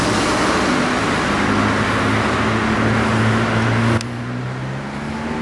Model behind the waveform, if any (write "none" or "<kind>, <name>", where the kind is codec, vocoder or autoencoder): none